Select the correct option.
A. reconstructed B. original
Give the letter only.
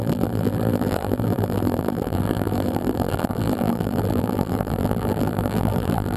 A